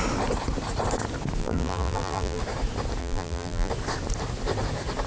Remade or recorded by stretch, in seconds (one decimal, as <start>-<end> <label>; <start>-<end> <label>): 0.0-1.4 recorded; 1.4-2.4 remade; 2.4-3.0 recorded; 3.0-3.7 remade; 3.7-5.1 recorded